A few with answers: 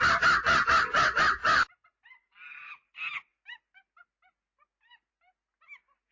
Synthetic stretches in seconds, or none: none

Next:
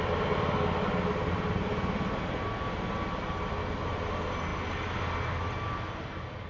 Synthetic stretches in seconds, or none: none

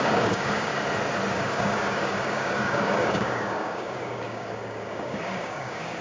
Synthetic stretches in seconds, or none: 0.0-0.7 (codec, DAC); 1.3-6.0

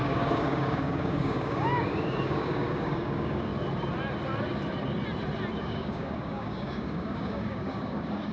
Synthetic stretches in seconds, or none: 0.0-3.5 (codec, DAC); 5.6-8.3

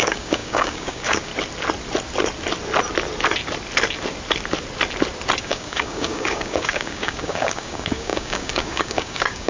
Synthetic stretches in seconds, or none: 0.0-1.3 (codec, DAC); 5.4-9.5

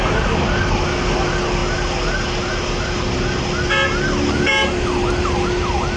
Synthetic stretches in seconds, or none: none